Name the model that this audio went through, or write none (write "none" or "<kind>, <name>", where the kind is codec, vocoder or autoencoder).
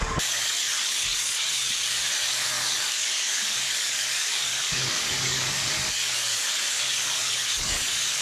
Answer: codec, DAC